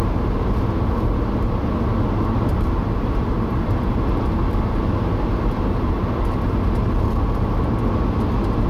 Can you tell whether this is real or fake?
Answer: real